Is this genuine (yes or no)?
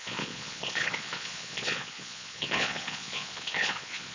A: no